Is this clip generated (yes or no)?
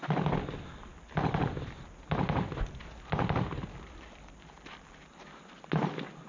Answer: no